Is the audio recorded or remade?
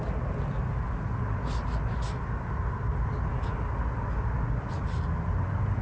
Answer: recorded